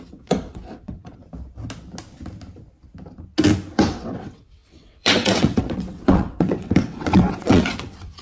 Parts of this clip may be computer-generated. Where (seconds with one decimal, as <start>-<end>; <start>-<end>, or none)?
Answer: 0.0-1.2; 3.7-8.2